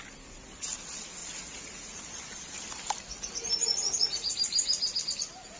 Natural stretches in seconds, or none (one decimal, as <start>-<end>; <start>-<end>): 0.0-1.2; 2.0-3.6; 4.3-5.6